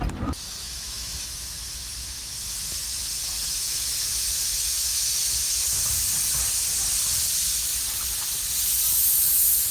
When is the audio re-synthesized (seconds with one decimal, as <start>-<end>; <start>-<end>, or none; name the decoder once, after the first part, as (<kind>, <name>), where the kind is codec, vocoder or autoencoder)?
0.6-5.8 (autoencoder, DAC-VAE)